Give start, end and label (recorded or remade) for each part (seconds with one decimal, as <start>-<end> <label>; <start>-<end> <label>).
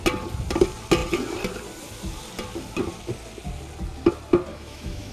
0.0-4.5 recorded; 4.5-5.1 remade